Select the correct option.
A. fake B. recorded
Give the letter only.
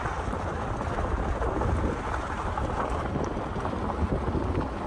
B